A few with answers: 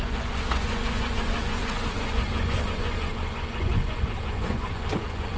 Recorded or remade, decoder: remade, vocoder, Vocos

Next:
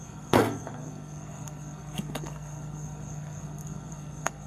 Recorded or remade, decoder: remade, codec, SNAC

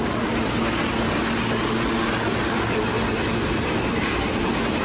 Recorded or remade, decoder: recorded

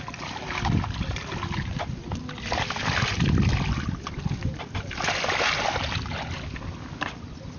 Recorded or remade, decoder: recorded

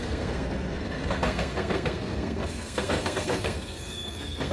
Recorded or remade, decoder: remade, codec, SNAC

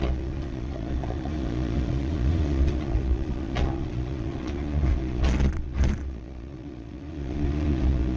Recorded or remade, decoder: remade, vocoder, Vocos